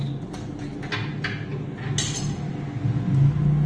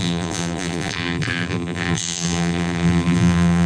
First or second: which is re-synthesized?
second